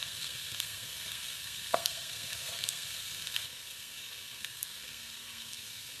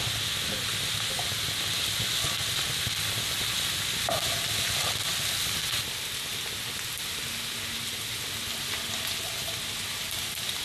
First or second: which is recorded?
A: second